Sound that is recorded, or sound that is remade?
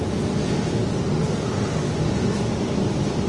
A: recorded